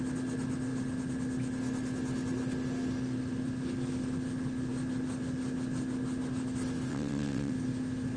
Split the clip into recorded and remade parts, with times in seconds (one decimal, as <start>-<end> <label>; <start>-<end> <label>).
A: 0.0-6.9 recorded; 6.9-7.5 remade; 7.5-8.2 recorded